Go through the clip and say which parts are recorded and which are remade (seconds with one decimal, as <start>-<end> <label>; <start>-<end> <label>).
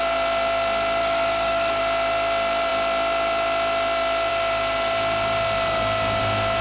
0.0-1.0 recorded; 1.0-1.8 remade; 1.8-6.6 recorded